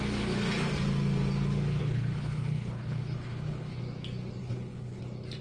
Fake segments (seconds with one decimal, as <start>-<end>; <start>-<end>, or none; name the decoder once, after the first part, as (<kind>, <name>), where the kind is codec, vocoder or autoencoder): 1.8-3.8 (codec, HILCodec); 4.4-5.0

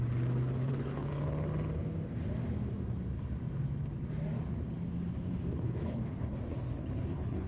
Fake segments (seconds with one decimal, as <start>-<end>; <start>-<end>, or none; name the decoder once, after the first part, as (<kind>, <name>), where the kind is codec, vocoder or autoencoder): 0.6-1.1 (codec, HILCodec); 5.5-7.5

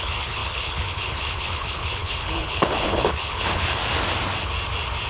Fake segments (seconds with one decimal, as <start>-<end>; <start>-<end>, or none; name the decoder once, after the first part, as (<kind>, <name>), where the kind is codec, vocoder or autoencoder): 0.0-3.8 (codec, HILCodec)

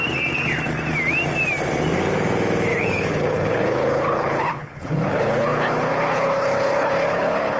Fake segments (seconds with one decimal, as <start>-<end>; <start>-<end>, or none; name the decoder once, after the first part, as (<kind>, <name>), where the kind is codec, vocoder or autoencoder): 2.7-7.6 (codec, HILCodec)

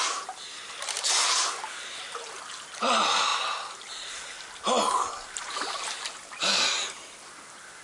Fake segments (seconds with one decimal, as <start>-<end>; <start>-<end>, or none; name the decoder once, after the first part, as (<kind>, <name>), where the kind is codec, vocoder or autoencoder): none

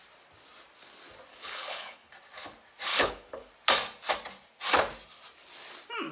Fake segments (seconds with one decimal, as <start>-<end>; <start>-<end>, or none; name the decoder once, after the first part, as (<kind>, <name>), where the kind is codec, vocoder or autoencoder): 1.3-2.1 (codec, HILCodec); 2.9-3.5